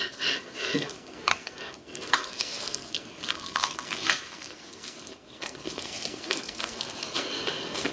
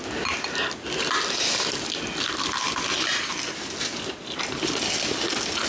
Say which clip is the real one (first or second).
second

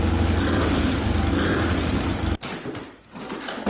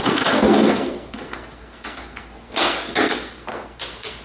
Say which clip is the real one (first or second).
first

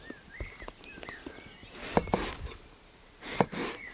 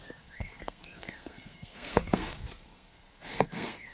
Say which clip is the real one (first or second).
first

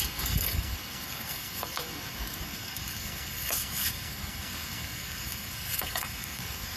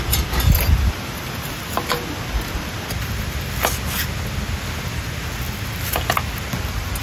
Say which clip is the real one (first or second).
second